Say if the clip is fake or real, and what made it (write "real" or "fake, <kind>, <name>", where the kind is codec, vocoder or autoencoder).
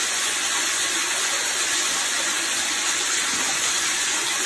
fake, vocoder, Vocos